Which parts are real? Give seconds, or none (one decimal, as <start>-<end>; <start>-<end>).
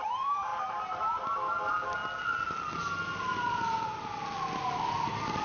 2.0-5.4